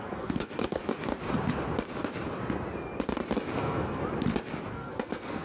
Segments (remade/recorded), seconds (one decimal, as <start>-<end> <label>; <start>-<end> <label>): 0.0-0.8 remade; 0.8-3.6 recorded; 3.6-4.0 remade; 4.0-4.7 recorded; 4.7-5.4 remade